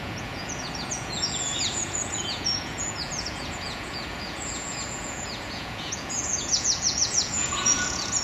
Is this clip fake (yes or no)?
yes